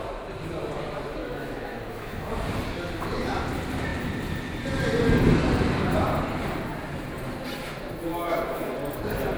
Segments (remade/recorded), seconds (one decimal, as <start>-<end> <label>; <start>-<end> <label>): 0.0-1.2 recorded; 1.2-2.3 remade; 2.3-8.1 recorded; 8.1-8.7 remade; 8.7-9.4 recorded